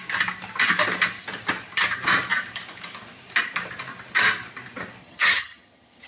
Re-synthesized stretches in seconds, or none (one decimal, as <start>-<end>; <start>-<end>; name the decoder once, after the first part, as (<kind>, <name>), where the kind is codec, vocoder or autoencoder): 5.0-6.1 (vocoder, HiFi-GAN)